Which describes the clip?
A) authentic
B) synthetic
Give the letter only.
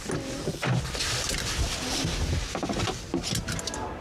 A